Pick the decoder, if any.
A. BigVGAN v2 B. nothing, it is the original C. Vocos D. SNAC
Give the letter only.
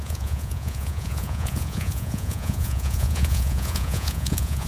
C